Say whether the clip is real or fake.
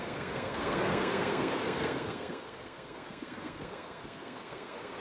fake